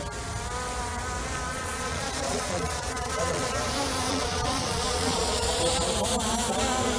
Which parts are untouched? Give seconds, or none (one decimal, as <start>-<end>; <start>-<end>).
0.0-1.5; 3.5-4.1; 5.6-7.0